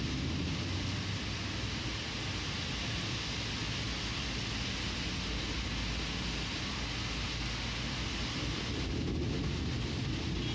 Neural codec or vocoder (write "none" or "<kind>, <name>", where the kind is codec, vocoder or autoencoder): none